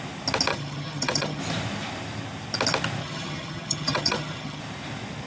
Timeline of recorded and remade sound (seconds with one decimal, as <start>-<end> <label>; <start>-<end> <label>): 0.0-0.5 recorded; 0.5-1.4 remade; 1.4-3.0 recorded; 3.0-4.6 remade; 4.6-5.3 recorded